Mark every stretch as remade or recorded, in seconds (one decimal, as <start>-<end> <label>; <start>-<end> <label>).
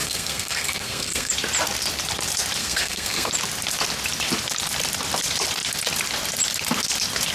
0.0-1.3 remade; 1.3-2.6 recorded; 2.6-3.3 remade; 3.3-7.3 recorded